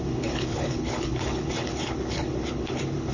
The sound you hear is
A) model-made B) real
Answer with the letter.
A